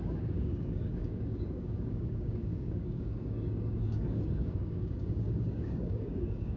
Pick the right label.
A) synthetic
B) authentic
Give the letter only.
A